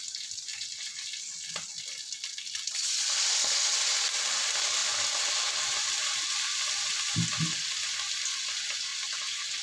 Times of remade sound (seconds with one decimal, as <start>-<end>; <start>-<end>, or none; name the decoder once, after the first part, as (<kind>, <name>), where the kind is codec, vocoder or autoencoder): 8.9-9.6 (vocoder, BigVGAN v2)